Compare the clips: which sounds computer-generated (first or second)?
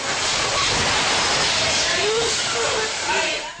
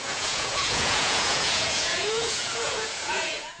second